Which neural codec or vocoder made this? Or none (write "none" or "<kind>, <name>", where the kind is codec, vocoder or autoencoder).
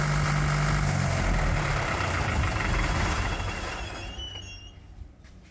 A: none